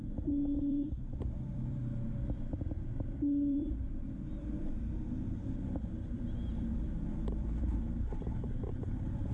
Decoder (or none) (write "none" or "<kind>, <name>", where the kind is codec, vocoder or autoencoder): vocoder, BigVGAN v2